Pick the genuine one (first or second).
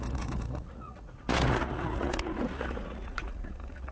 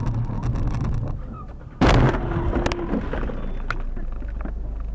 second